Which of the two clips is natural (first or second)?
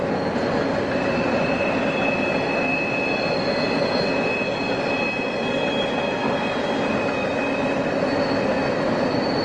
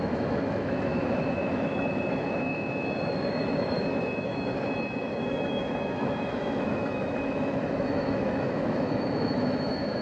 first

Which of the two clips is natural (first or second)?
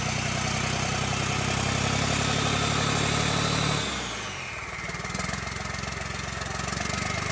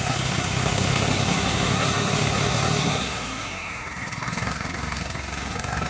first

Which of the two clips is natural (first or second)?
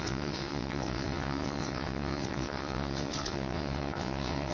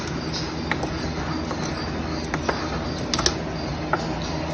second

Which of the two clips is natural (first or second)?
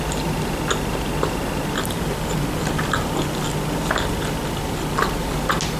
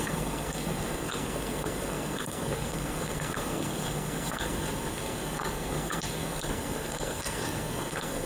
first